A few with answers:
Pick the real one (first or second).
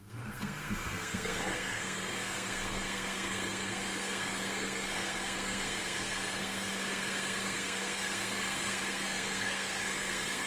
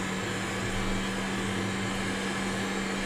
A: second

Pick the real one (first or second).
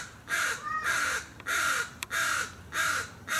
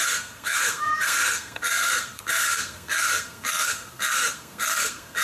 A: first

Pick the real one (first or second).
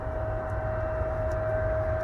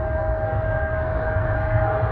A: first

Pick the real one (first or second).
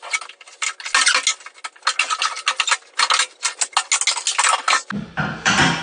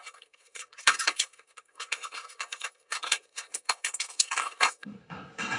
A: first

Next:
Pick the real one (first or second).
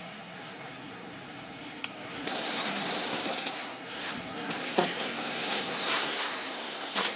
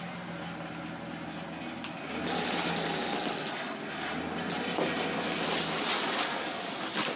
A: second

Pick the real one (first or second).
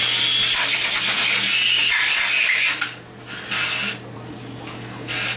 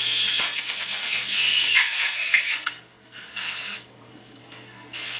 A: first